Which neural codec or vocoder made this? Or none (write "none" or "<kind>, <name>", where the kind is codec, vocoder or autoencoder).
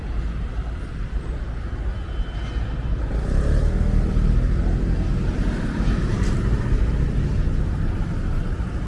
none